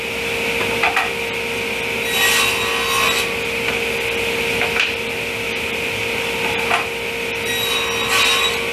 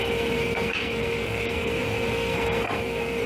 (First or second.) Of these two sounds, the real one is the first